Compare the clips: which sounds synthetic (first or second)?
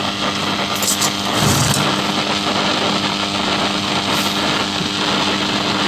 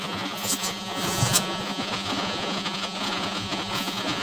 second